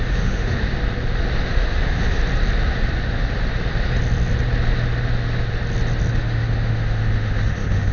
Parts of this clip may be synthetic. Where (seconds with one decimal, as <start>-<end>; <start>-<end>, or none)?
0.0-0.6; 1.4-2.2; 6.1-7.9